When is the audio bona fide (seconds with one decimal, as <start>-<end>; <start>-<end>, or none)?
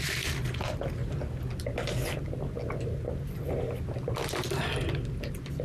0.0-5.6